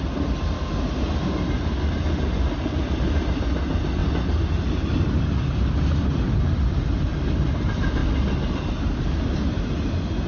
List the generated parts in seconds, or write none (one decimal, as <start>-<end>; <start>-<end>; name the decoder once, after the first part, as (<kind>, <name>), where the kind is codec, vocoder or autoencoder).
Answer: none